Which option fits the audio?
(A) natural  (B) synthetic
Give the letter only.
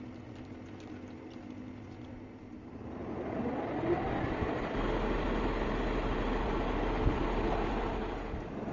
A